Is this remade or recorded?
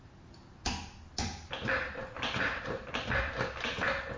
recorded